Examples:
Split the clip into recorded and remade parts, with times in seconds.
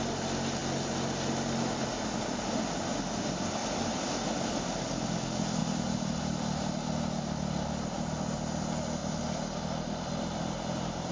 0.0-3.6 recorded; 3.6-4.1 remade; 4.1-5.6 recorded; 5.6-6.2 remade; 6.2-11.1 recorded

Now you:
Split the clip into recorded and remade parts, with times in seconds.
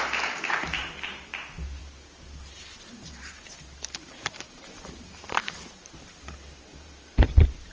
0.0-7.7 remade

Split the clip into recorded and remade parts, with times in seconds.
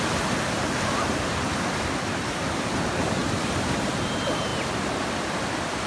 0.0-4.5 remade; 4.5-5.1 recorded; 5.1-5.9 remade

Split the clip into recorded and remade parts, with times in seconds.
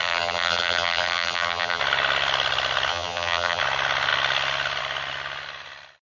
0.0-1.8 remade; 1.8-2.9 recorded; 2.9-3.6 remade; 3.6-6.0 recorded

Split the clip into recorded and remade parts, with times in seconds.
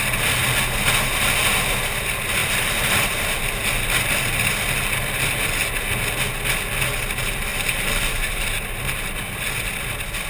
0.0-2.4 recorded; 2.4-3.4 remade; 3.4-7.5 recorded; 7.5-8.4 remade; 8.4-10.3 recorded